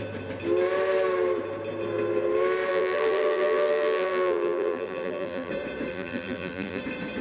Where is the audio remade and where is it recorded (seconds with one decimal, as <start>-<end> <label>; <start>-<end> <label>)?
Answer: 0.0-2.7 recorded; 2.7-5.5 remade; 5.5-5.9 recorded; 5.9-6.8 remade; 6.8-7.2 recorded